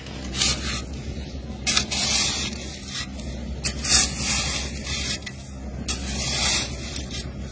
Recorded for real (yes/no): yes